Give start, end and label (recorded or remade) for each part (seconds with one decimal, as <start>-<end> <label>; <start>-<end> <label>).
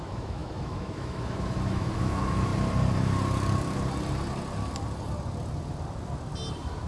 0.0-2.5 remade; 2.5-6.9 recorded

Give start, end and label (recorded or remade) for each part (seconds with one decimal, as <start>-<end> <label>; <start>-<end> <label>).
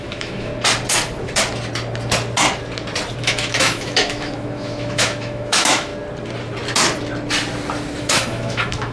0.0-0.5 remade; 0.5-3.2 recorded; 3.2-5.9 remade; 5.9-8.0 recorded; 8.0-8.9 remade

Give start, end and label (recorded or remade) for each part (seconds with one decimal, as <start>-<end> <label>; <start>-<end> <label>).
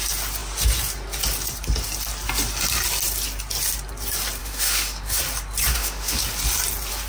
0.0-4.4 recorded; 4.4-5.2 remade; 5.2-5.7 recorded; 5.7-6.2 remade; 6.2-7.1 recorded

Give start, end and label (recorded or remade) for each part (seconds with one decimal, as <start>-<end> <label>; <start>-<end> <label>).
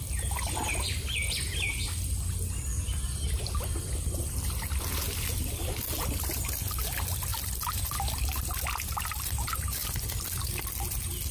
0.0-11.3 recorded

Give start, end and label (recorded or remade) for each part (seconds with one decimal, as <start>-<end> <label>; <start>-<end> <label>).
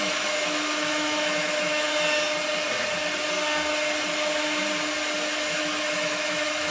0.0-1.9 remade; 1.9-5.6 recorded; 5.6-6.7 remade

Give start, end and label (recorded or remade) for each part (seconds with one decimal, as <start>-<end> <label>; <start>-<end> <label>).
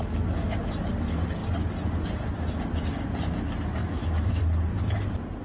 0.0-3.8 recorded; 3.8-4.4 remade; 4.4-5.4 recorded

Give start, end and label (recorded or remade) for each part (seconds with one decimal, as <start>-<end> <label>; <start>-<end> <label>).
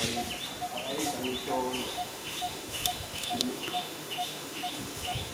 0.0-1.8 recorded; 1.8-5.3 remade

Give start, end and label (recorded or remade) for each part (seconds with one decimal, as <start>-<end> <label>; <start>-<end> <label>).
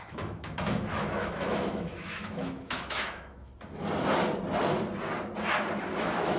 0.0-3.5 remade; 3.5-6.0 recorded; 6.0-6.4 remade